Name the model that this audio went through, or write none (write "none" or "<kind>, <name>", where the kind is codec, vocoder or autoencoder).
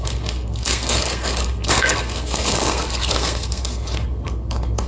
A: codec, SNAC